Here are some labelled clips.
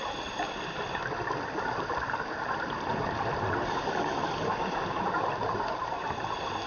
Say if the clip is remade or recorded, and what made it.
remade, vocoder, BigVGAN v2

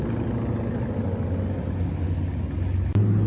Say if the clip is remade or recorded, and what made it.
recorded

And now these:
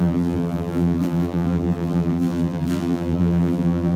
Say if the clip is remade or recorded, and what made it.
remade, vocoder, BigVGAN v2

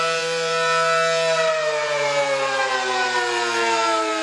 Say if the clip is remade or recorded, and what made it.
remade, vocoder, BigVGAN v2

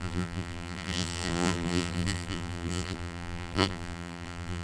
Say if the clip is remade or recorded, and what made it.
remade, vocoder, BigVGAN v2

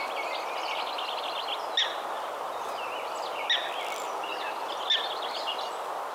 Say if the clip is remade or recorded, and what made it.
recorded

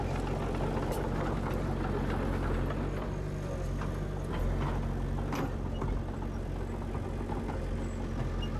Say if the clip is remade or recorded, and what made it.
recorded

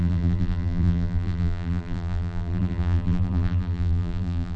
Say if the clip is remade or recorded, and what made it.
remade, vocoder, BigVGAN v2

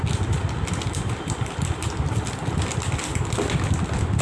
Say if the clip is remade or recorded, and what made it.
recorded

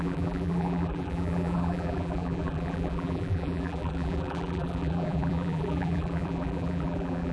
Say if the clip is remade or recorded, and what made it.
remade, vocoder, BigVGAN v2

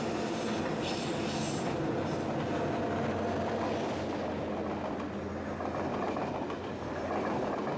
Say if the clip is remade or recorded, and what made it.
recorded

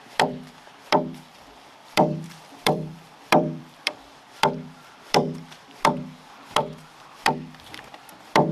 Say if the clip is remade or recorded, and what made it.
remade, vocoder, BigVGAN v2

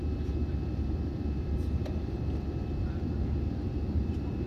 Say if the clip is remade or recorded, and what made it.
remade, vocoder, BigVGAN v2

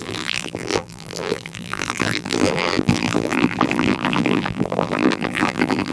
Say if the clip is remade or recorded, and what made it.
remade, vocoder, BigVGAN v2